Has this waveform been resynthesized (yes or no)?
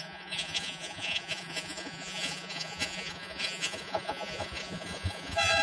yes